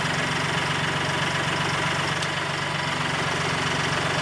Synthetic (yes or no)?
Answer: no